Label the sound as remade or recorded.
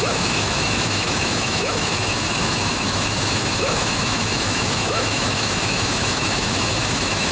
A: remade